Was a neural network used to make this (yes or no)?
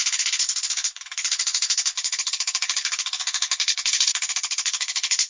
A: yes